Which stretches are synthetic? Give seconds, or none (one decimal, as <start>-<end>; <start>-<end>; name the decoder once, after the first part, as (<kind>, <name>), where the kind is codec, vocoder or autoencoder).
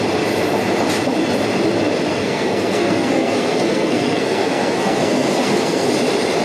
2.1-5.9 (codec, SNAC)